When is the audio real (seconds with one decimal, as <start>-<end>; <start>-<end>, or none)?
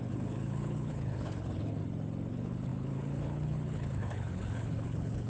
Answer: 1.8-2.3